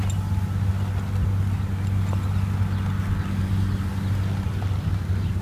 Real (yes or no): yes